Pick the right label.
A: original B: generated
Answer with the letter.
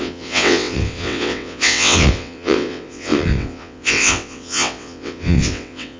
B